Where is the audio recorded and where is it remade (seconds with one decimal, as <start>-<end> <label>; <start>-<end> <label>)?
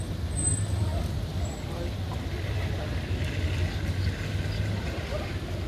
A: 0.0-5.7 recorded